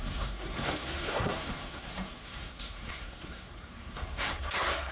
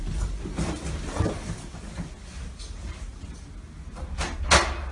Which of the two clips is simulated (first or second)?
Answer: first